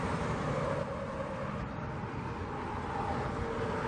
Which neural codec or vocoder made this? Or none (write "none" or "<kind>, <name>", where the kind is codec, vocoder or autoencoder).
none